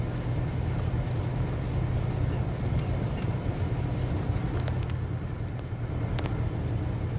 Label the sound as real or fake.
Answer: real